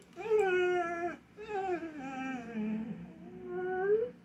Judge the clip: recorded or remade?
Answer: recorded